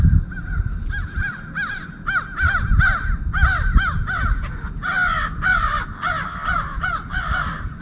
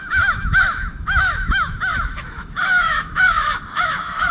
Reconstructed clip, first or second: second